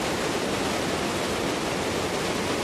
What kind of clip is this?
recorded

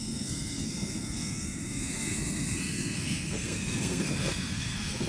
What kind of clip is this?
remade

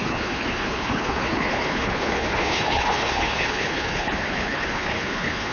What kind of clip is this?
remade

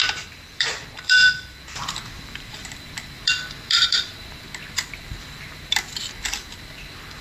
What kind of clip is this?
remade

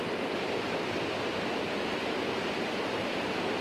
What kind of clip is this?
recorded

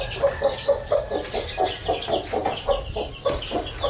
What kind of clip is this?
recorded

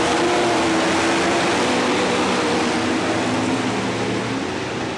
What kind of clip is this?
recorded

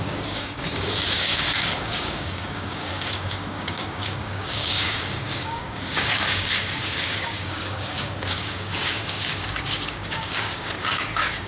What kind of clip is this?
remade